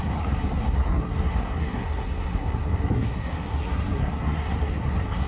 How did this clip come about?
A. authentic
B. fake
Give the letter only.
B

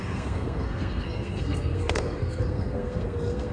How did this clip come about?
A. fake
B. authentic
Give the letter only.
A